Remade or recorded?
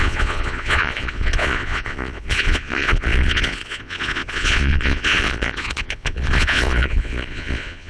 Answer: remade